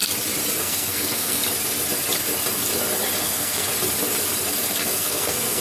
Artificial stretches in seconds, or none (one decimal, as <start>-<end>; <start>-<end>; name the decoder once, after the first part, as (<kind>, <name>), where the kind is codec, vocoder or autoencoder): 0.6-1.4 (codec, SNAC); 3.2-3.7; 4.7-5.6